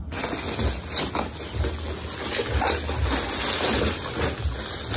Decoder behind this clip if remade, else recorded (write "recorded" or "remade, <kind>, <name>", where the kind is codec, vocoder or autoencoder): recorded